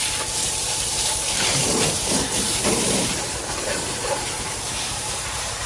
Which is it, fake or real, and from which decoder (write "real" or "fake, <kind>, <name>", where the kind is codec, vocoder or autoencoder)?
fake, vocoder, BigVGAN v2